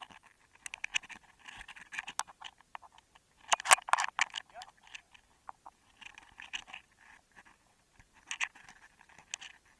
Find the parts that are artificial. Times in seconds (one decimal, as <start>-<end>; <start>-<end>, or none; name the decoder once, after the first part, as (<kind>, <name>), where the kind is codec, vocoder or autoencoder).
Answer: none